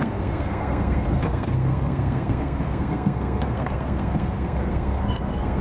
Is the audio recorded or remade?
remade